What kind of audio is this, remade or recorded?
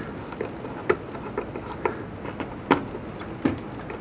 recorded